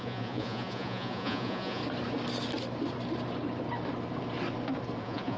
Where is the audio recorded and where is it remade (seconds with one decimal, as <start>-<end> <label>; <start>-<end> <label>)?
0.0-1.8 remade; 1.8-5.0 recorded; 5.0-5.4 remade